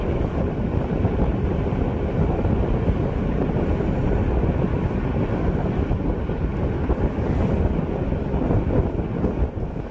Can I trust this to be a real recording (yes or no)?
yes